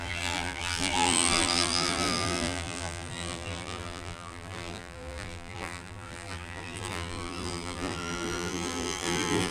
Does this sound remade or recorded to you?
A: remade